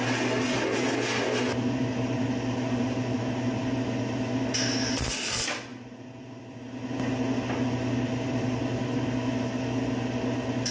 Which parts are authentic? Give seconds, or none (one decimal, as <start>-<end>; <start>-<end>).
0.0-10.7